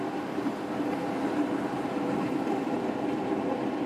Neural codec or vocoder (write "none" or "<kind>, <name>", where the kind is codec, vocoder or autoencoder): none